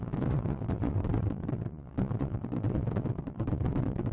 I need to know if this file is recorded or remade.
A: remade